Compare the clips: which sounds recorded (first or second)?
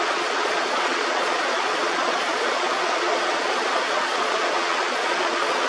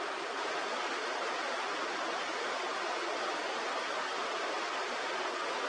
second